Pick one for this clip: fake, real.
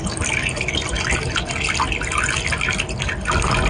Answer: real